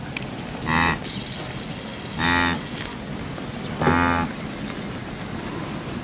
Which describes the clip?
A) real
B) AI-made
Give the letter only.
A